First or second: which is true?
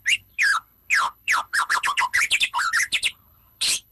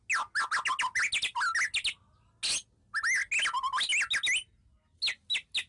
second